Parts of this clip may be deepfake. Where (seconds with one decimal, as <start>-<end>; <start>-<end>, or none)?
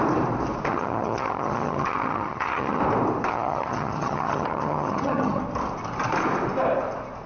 0.7-2.8; 3.3-5.4